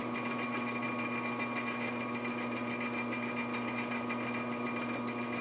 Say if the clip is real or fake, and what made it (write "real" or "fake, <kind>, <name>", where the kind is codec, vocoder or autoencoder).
real